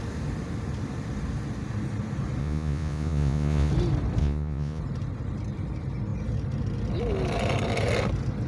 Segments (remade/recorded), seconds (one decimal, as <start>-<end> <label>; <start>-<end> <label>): 0.0-2.4 recorded; 2.4-3.7 remade; 3.7-4.2 recorded; 4.2-4.8 remade; 4.8-8.5 recorded